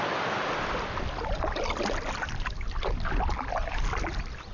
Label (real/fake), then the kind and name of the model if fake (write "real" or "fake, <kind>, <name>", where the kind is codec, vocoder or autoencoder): real